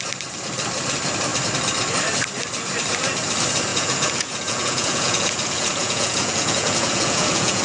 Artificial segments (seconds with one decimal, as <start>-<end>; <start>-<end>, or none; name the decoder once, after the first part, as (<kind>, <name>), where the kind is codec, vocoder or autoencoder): 3.7-7.6 (vocoder, Vocos)